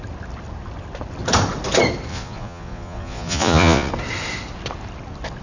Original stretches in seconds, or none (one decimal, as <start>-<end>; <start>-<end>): 0.0-2.1; 3.9-5.4